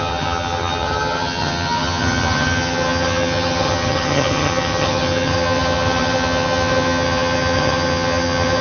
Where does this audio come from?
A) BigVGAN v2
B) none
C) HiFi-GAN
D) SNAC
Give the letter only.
C